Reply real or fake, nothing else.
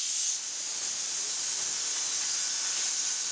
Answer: real